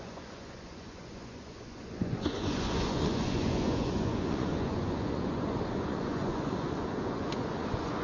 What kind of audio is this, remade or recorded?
remade